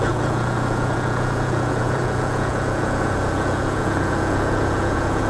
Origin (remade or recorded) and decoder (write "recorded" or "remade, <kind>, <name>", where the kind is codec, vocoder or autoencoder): remade, vocoder, Vocos